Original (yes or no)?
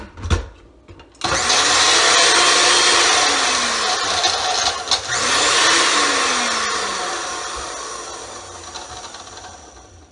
yes